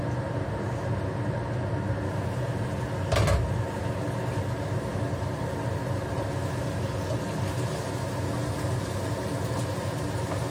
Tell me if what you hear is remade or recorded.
recorded